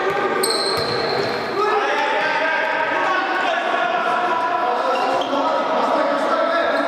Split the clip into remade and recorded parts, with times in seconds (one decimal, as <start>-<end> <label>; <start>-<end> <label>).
0.0-6.9 recorded